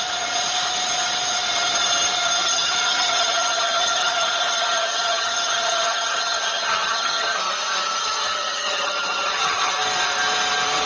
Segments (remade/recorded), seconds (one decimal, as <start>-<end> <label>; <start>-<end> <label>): 0.0-2.4 recorded; 2.4-7.4 remade; 7.4-8.0 recorded; 8.0-9.7 remade; 9.7-10.9 recorded